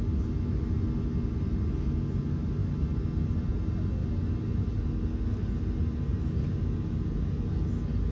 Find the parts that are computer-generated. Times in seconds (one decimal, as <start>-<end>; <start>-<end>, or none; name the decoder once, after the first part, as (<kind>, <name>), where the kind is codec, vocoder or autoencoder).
6.6-7.5 (vocoder, Vocos)